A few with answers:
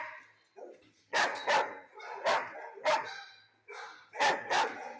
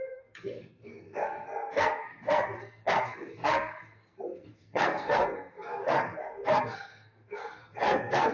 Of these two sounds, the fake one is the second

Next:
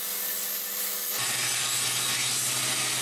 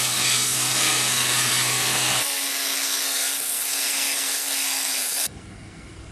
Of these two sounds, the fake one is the second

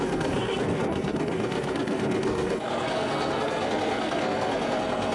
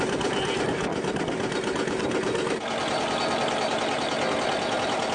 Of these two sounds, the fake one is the first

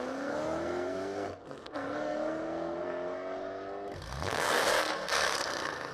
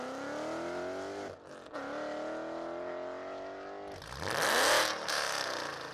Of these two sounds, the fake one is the first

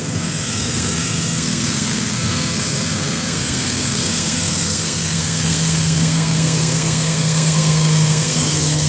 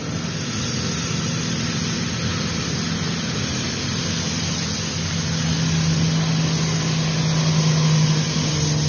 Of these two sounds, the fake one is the first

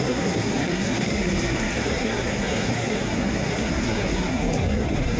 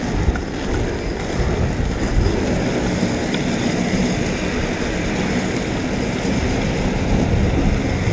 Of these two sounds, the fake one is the first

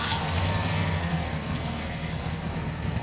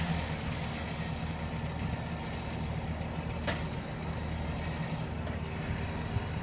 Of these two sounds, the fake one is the first